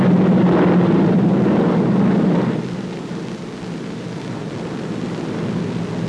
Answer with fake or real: real